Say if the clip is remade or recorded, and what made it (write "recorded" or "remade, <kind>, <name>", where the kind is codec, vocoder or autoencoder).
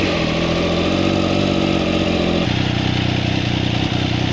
recorded